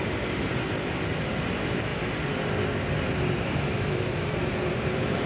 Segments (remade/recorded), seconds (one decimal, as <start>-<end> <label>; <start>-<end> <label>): 0.0-1.9 remade; 1.9-3.1 recorded; 3.1-5.3 remade